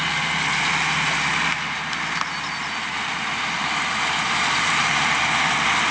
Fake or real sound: real